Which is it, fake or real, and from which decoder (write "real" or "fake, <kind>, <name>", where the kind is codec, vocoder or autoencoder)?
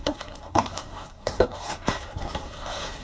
fake, codec, SNAC